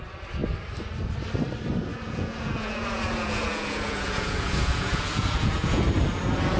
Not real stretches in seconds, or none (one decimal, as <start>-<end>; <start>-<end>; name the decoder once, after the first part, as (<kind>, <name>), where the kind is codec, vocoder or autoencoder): 1.9-5.9 (vocoder, Vocos)